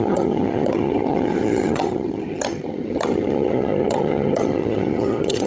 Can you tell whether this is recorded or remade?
remade